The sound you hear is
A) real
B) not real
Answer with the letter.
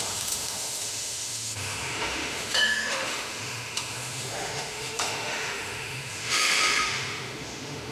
B